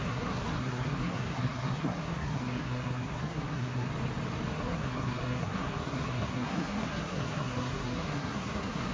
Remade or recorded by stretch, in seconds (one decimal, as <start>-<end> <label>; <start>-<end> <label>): 0.0-3.9 remade; 3.9-4.5 recorded; 4.5-8.9 remade